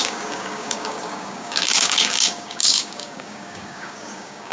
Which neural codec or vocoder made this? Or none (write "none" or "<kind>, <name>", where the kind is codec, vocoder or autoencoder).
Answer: codec, DAC